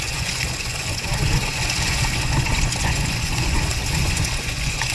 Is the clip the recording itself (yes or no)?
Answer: no